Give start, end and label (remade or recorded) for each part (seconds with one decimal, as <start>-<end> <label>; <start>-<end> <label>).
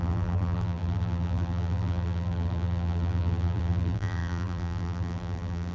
0.0-5.7 remade